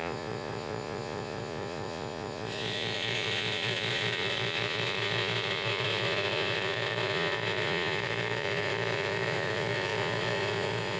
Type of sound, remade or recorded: remade